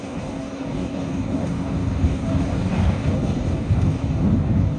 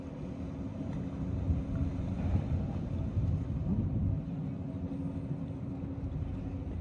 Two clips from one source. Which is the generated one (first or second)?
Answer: first